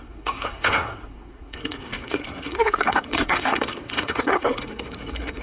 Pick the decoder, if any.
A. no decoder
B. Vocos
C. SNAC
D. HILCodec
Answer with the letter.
C